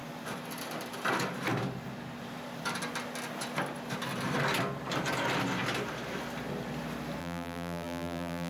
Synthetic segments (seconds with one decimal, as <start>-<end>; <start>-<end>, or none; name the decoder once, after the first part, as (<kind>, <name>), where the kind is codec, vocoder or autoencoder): 7.2-8.5 (vocoder, BigVGAN v2)